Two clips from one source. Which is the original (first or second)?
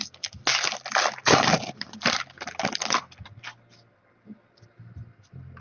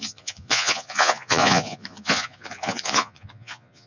first